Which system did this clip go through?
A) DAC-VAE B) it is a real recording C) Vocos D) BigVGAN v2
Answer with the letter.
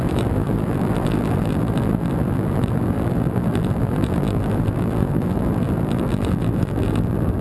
D